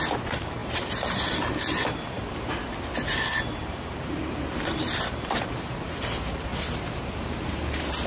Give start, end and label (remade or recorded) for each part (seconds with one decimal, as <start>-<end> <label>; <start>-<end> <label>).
0.0-2.2 remade; 2.2-3.5 recorded; 3.5-6.5 remade; 6.5-7.2 recorded; 7.2-8.1 remade